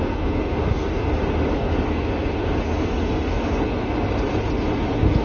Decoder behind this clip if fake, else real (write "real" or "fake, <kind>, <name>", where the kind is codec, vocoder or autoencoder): real